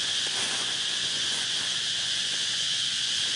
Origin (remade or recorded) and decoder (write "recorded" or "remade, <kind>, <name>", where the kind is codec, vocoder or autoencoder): remade, vocoder, Vocos